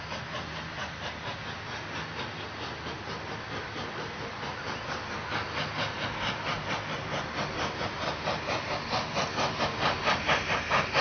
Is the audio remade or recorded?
recorded